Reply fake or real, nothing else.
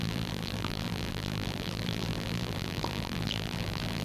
fake